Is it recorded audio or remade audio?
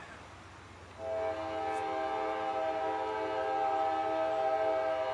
recorded